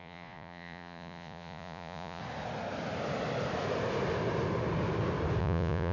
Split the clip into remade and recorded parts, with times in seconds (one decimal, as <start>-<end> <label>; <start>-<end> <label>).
0.0-2.2 remade; 2.2-5.4 recorded; 5.4-5.9 remade